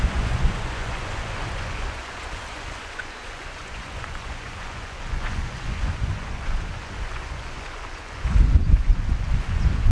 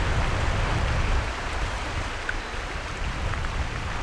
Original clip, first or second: second